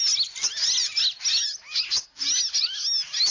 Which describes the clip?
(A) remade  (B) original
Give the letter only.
B